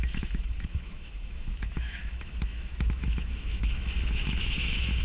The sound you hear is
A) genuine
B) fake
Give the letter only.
B